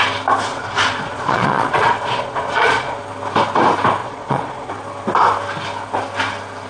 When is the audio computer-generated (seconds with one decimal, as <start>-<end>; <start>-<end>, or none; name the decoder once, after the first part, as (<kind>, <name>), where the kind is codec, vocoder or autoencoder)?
0.5-3.0 (vocoder, Vocos); 4.0-4.7